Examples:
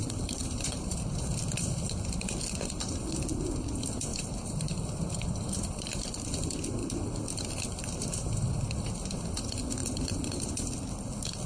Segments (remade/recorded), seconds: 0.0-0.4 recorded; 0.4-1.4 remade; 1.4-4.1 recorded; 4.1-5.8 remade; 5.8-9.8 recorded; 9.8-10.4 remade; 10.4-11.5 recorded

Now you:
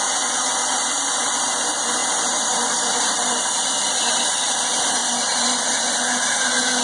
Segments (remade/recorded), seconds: 0.0-2.0 recorded; 2.0-4.2 remade; 4.2-5.0 recorded; 5.0-5.6 remade; 5.6-6.8 recorded

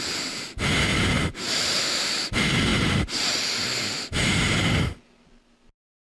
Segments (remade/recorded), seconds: 0.0-0.9 recorded; 0.9-1.8 remade; 1.8-6.1 recorded

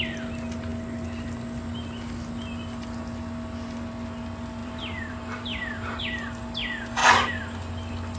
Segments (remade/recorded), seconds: 0.0-4.6 recorded; 4.6-6.0 remade; 6.0-7.0 recorded; 7.0-7.7 remade; 7.7-8.2 recorded

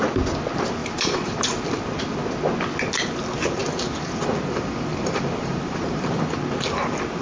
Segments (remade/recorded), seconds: 0.0-0.8 recorded; 0.8-1.6 remade; 1.6-4.9 recorded; 4.9-6.2 remade; 6.2-7.2 recorded

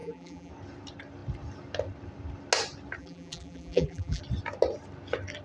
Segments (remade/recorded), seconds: 0.0-0.5 remade; 0.5-3.0 recorded; 3.0-4.2 remade; 4.2-5.4 recorded

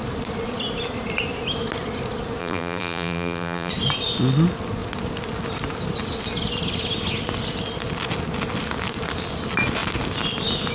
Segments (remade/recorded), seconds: 0.0-2.4 recorded; 2.4-3.7 remade; 3.7-10.7 recorded